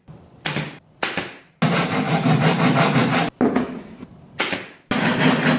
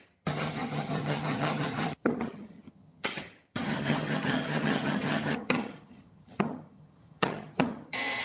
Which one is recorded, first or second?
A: first